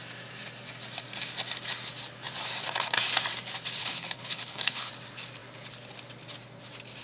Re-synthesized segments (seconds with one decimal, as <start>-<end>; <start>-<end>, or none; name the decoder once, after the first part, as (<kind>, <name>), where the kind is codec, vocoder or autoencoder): 3.8-4.9 (codec, HILCodec)

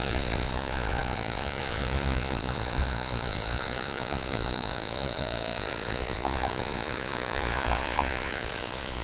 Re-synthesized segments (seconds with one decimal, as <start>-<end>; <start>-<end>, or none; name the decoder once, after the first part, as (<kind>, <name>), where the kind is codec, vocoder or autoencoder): 0.0-9.0 (vocoder, Vocos)